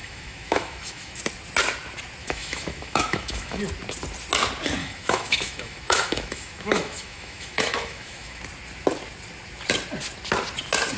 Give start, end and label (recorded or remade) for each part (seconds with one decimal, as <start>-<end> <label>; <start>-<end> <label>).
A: 0.0-1.2 remade; 1.2-2.2 recorded; 2.2-3.6 remade; 3.6-4.8 recorded; 4.8-8.4 remade; 8.4-11.0 recorded